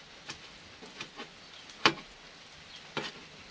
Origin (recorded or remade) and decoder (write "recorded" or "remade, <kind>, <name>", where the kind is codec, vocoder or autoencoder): recorded